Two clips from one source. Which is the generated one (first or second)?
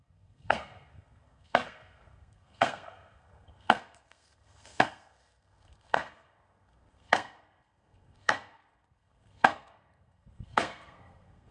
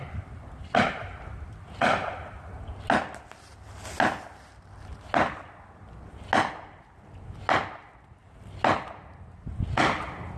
first